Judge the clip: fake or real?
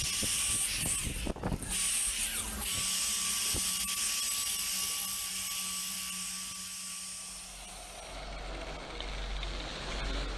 real